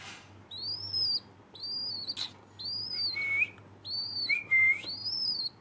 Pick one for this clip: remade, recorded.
recorded